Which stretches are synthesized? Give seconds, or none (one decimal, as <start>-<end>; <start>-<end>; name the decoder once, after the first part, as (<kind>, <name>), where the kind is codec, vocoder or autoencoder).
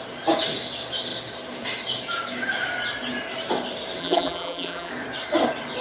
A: 4.0-4.9 (vocoder, BigVGAN v2)